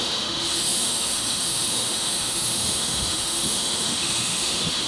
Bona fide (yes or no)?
no